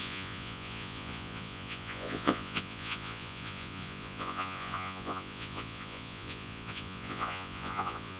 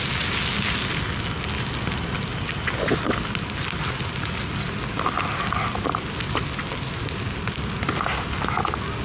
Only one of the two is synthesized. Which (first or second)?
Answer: first